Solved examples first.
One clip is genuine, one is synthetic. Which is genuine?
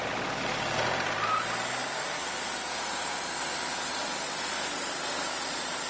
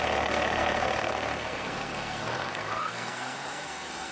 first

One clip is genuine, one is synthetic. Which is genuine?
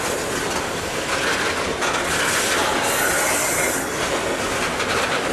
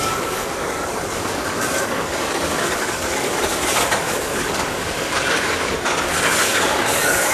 first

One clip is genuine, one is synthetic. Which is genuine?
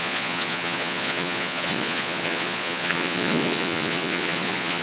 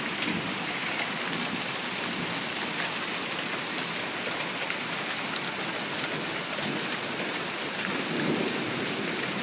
second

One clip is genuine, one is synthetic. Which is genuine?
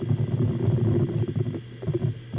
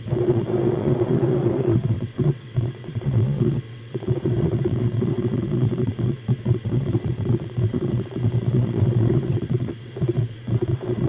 first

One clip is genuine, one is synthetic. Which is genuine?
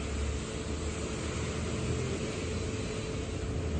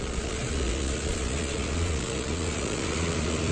first